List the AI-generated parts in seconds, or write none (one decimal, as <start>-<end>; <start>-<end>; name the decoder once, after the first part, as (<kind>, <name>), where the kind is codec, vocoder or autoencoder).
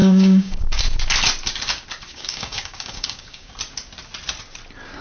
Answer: 0.0-0.8 (codec, DAC); 2.1-3.5